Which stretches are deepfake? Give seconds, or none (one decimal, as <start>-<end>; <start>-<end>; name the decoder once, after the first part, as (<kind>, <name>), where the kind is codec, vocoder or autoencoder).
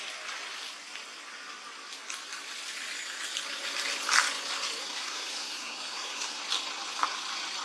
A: 4.8-6.4 (codec, SNAC)